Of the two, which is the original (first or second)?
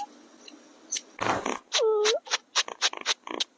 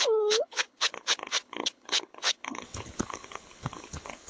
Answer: first